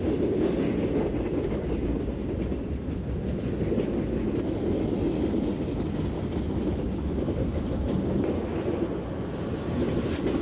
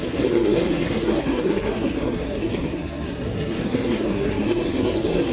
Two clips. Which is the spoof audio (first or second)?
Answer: second